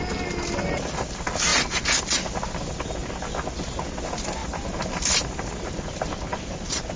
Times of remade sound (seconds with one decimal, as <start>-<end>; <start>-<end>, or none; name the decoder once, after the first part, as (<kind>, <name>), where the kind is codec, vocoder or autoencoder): 4.4-5.7 (vocoder, BigVGAN v2); 6.3-7.0